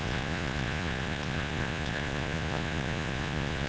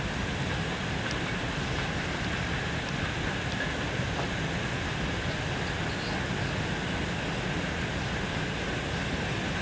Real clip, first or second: second